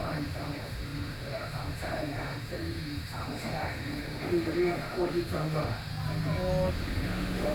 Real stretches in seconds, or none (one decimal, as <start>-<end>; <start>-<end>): 5.9-6.7